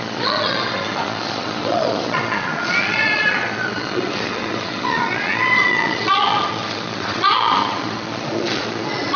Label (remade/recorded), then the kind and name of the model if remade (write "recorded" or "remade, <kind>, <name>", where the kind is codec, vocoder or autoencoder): remade, vocoder, Vocos